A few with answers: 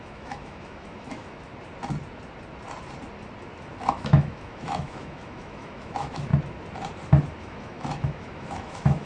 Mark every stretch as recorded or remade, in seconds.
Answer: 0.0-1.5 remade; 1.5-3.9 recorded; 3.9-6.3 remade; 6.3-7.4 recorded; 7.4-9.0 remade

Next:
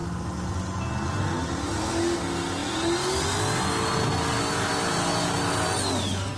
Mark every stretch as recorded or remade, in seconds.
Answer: 0.0-6.4 recorded

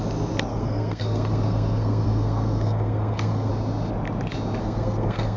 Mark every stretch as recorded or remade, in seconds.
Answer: 0.0-0.5 recorded; 0.5-3.5 remade; 3.5-4.6 recorded; 4.6-5.4 remade